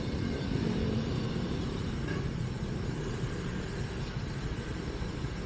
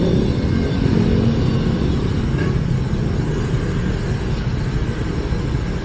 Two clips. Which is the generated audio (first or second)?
first